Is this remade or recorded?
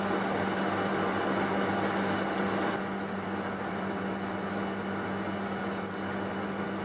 recorded